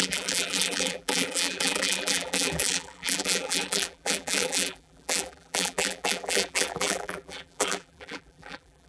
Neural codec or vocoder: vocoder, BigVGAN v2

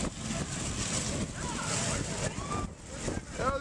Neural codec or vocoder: none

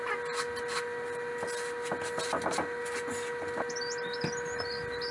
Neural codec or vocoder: none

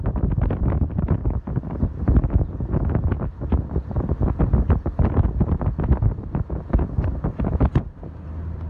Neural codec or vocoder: vocoder, BigVGAN v2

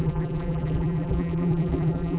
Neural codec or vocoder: vocoder, BigVGAN v2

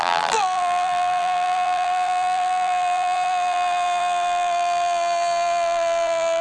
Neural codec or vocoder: vocoder, BigVGAN v2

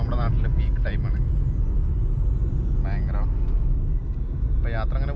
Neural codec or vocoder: none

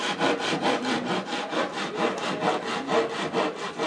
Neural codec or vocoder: none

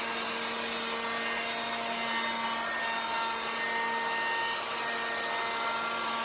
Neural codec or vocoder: none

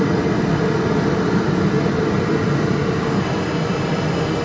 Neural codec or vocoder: none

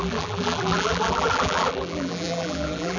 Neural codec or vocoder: vocoder, BigVGAN v2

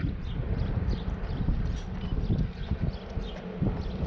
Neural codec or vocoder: none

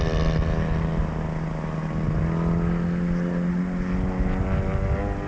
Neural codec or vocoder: none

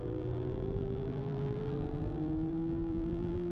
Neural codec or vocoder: vocoder, BigVGAN v2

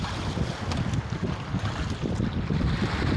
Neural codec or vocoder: none